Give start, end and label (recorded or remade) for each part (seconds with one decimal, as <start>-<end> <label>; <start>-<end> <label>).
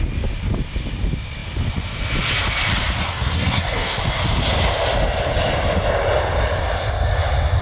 0.0-3.0 recorded; 3.0-4.0 remade; 4.0-7.6 recorded